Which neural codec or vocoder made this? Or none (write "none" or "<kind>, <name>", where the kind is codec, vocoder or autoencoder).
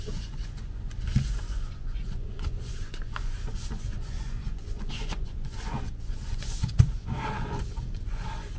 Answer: vocoder, Vocos